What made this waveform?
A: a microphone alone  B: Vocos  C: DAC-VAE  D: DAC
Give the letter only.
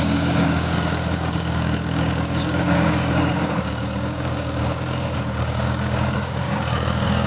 D